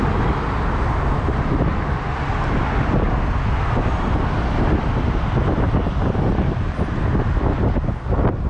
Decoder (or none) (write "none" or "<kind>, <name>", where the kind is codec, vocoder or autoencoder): none